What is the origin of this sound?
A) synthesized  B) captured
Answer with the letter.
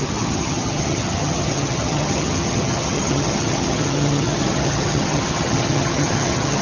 A